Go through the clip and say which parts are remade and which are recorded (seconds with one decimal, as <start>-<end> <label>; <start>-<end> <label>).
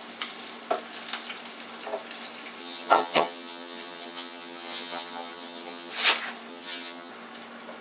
0.0-2.6 recorded; 2.6-5.9 remade; 5.9-6.5 recorded; 6.5-7.1 remade; 7.1-7.8 recorded